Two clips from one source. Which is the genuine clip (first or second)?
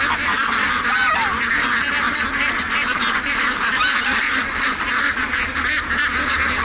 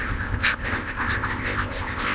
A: first